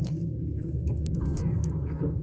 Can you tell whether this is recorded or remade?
remade